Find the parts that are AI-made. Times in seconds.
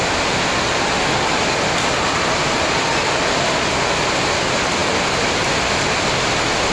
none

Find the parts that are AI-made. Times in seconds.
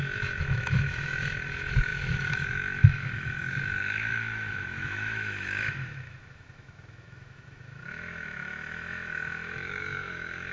0.0-10.5 (autoencoder, DAC-VAE)